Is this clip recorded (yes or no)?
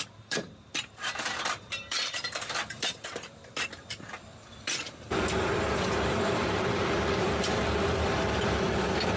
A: no